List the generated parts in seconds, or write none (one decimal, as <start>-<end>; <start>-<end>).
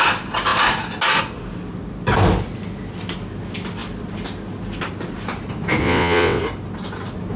5.8-6.4